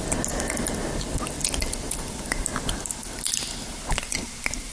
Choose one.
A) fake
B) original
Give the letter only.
B